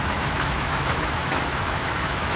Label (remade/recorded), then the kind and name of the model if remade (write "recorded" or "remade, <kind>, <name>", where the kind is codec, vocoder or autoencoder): remade, autoencoder, DAC-VAE